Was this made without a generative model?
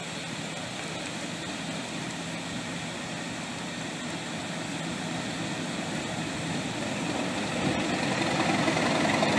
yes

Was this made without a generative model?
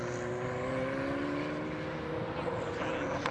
yes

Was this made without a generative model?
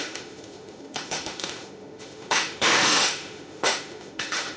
no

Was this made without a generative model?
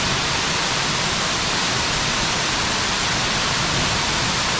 yes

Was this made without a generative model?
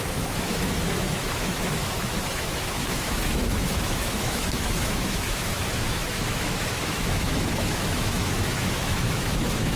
no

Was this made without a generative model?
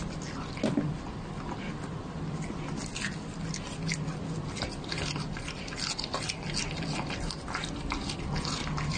yes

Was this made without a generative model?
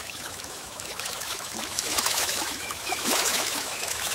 no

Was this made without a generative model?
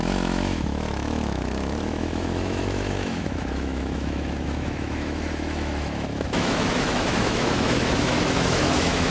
no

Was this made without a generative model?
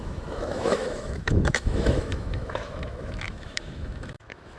no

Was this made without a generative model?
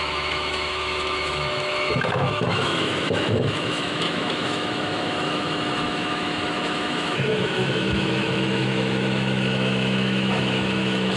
no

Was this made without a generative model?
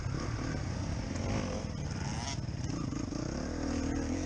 yes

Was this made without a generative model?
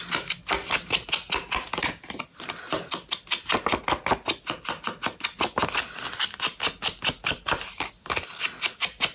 yes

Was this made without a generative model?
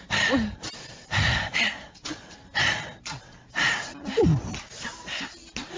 yes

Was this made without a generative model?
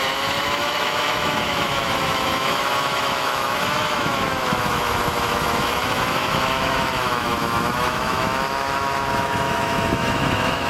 no